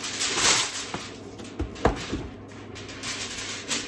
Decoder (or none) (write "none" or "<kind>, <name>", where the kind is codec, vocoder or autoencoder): none